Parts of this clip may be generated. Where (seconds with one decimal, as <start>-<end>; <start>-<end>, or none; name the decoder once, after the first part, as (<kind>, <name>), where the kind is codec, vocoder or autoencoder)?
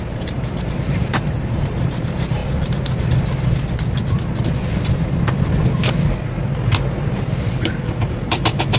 0.0-2.4 (vocoder, BigVGAN v2); 6.9-8.8